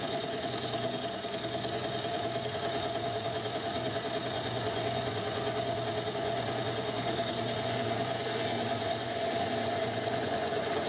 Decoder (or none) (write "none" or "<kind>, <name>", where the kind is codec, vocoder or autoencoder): vocoder, Vocos